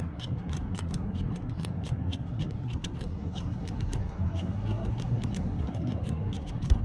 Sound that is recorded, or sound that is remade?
remade